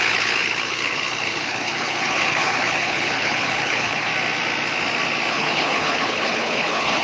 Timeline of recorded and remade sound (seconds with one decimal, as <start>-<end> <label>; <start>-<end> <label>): 0.0-4.1 remade; 4.1-5.3 recorded; 5.3-7.0 remade